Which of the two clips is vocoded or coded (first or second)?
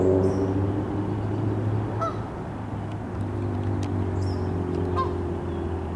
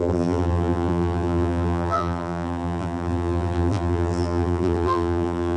second